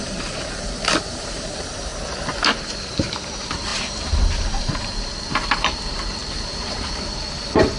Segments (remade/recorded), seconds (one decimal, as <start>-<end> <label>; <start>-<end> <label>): 0.0-1.9 remade; 1.9-2.6 recorded; 2.6-7.8 remade